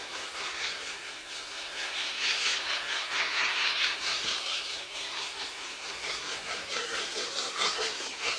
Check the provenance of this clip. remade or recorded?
remade